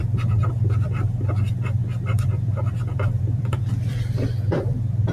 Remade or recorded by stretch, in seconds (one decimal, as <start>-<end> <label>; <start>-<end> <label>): 0.0-5.1 remade